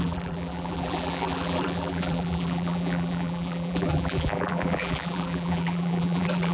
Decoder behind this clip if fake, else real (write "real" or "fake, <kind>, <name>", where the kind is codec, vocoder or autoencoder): fake, vocoder, BigVGAN v2